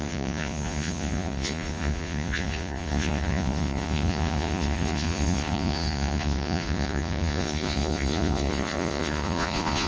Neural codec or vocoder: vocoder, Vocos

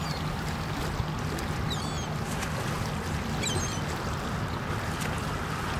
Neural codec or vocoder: none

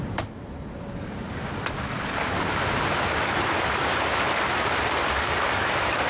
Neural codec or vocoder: vocoder, BigVGAN v2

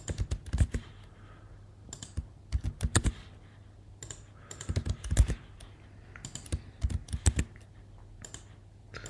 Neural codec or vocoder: none